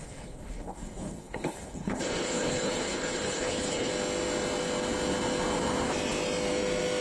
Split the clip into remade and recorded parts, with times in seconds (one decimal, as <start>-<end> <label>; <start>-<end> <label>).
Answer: 0.0-3.9 remade; 3.9-7.0 recorded